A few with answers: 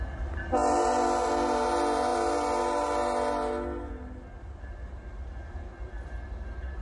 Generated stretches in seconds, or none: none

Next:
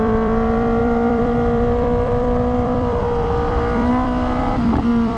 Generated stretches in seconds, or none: 0.0-5.2 (vocoder, BigVGAN v2)

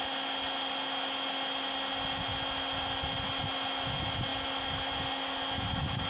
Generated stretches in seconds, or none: none